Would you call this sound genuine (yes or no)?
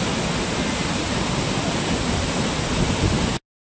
yes